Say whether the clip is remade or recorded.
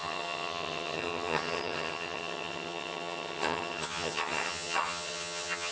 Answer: remade